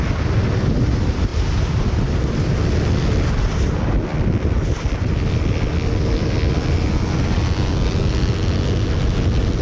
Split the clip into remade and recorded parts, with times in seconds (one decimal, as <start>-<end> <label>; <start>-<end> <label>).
0.0-9.6 recorded